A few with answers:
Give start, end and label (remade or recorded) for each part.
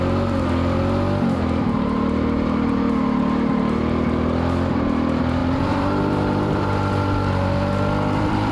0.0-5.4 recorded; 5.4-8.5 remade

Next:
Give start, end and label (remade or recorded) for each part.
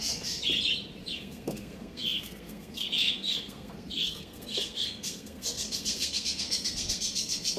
0.0-0.4 remade; 0.4-1.0 recorded; 1.0-7.6 remade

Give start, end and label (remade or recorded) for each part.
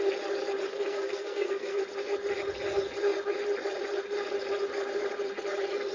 0.0-0.7 recorded; 0.7-1.8 remade; 1.8-5.9 recorded